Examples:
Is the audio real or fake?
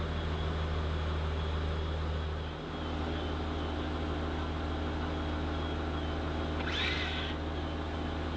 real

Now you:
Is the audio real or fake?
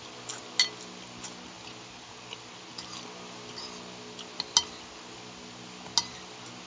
real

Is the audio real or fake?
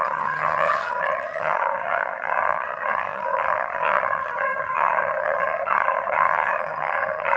fake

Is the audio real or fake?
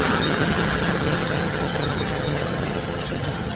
fake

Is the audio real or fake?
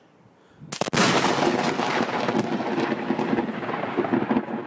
real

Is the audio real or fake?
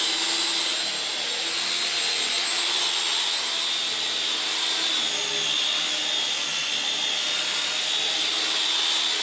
real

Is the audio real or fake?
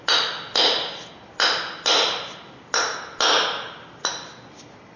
real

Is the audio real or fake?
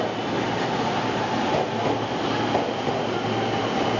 real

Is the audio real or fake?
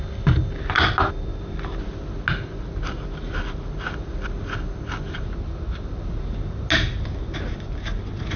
real